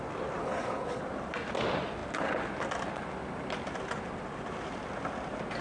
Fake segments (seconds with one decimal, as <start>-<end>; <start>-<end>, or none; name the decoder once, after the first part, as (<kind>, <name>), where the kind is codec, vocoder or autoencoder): 0.4-1.0 (codec, HILCodec)